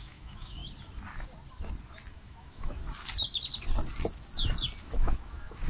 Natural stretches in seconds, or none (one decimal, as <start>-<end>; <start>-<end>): 0.6-2.1; 2.8-4.8